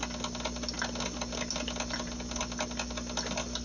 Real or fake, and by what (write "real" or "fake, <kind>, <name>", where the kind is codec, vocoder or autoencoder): real